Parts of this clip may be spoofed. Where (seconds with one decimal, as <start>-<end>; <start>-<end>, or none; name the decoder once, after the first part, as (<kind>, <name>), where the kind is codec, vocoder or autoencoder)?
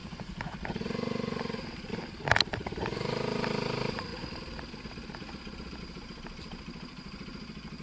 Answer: none